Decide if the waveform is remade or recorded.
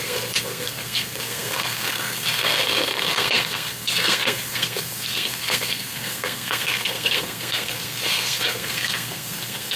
remade